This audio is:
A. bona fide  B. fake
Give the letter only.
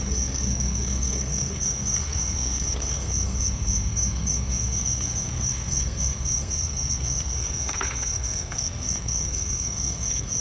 B